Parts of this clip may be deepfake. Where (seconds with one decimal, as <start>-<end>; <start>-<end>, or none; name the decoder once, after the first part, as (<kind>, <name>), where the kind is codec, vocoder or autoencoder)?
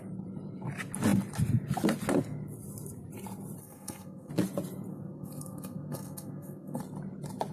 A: 3.6-4.3 (codec, SNAC); 4.9-6.8